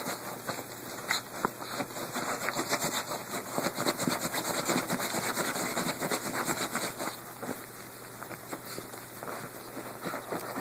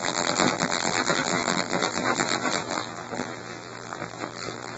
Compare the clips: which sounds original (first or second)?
first